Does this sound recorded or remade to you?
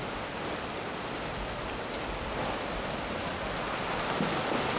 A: recorded